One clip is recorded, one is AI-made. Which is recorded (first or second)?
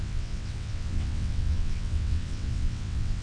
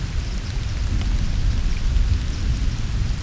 second